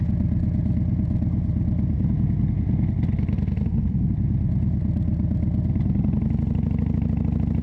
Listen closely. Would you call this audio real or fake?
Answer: real